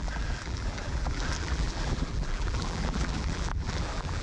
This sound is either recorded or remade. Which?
remade